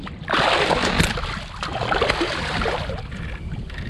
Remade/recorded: recorded